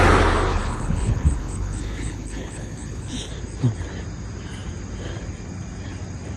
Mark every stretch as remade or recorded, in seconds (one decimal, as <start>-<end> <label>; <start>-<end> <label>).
0.0-0.5 recorded; 0.5-3.3 remade; 3.3-6.4 recorded